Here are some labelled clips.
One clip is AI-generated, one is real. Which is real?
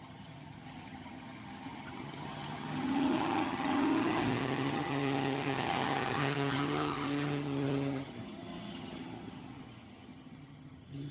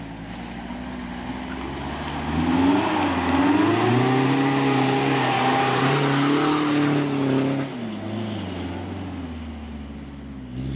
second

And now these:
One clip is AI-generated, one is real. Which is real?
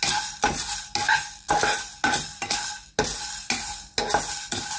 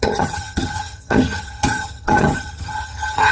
first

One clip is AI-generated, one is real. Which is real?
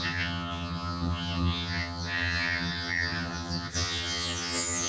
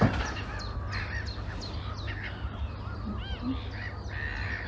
second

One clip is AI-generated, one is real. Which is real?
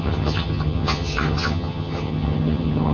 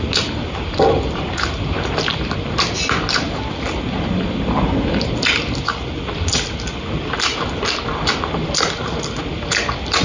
second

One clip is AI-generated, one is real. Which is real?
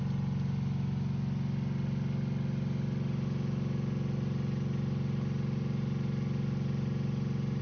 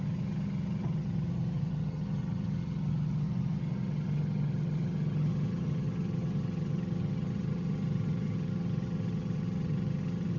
first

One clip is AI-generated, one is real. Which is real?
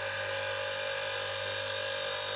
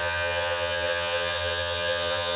first